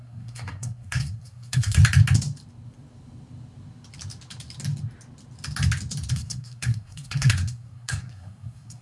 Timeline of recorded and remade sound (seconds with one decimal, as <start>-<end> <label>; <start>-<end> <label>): 0.0-1.8 remade; 1.8-6.1 recorded; 6.1-8.8 remade